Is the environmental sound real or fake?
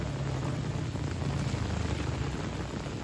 real